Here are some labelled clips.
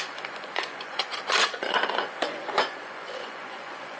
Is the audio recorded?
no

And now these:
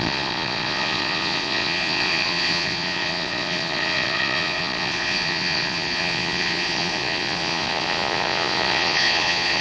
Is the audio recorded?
no